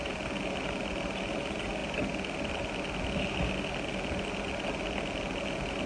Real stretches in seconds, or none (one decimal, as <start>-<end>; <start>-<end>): 0.0-5.9

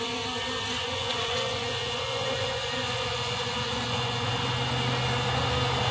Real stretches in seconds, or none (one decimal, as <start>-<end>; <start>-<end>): 0.0-0.8; 4.3-5.9

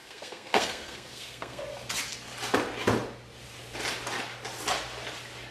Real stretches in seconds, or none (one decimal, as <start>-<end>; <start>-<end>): 1.6-5.5

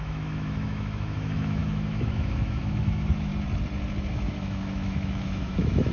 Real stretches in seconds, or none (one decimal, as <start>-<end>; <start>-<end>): 3.3-4.1